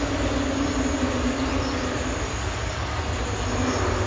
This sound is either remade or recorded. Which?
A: recorded